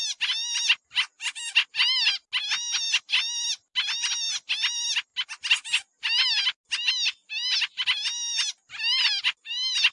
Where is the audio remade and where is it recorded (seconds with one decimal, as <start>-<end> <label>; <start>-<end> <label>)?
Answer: 0.0-9.9 recorded